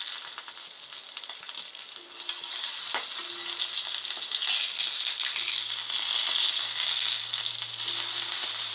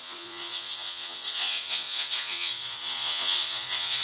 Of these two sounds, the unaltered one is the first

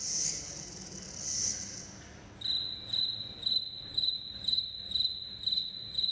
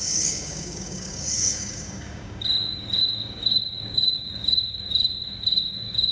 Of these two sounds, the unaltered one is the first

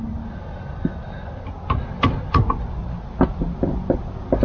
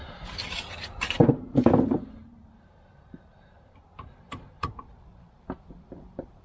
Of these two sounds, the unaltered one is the first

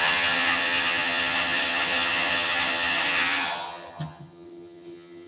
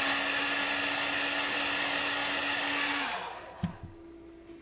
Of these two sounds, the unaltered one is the second